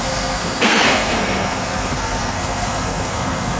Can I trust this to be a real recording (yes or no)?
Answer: no